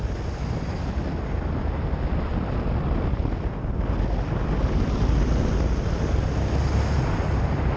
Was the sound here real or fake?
real